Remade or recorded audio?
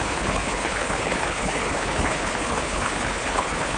remade